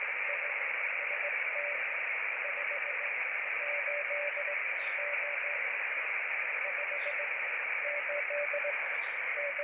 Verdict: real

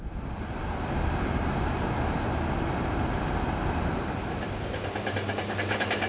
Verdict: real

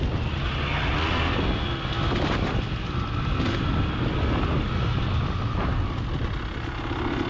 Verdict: real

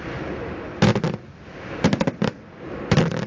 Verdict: real